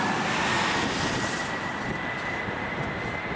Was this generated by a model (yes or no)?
no